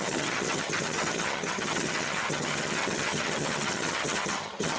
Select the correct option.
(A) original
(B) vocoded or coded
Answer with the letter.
B